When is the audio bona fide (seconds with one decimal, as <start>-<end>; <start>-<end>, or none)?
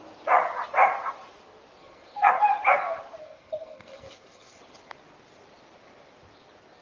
0.0-1.8; 2.3-3.2; 4.6-6.8